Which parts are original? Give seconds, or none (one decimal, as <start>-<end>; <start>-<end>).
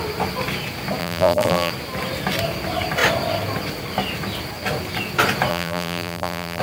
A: 0.0-1.0; 1.7-5.5